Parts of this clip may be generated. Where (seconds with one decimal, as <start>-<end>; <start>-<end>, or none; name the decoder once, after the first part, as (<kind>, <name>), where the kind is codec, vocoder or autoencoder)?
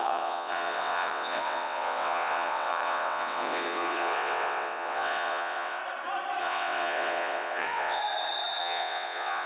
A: 0.0-5.8 (vocoder, WaveNeXt); 6.4-8.0; 8.6-9.5